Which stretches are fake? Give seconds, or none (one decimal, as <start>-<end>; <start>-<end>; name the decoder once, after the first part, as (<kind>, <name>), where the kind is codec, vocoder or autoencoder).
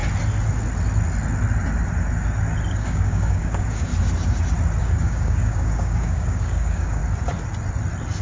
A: 2.7-3.9 (codec, DAC); 4.8-7.0